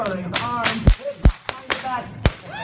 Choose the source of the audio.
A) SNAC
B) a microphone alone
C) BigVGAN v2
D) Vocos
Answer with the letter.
B